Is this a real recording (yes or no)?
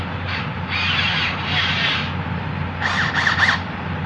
yes